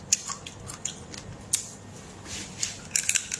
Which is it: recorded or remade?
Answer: recorded